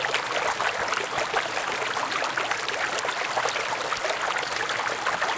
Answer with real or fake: real